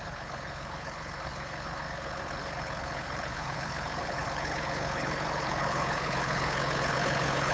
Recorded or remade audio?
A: remade